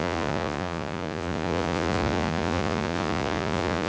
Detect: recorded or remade remade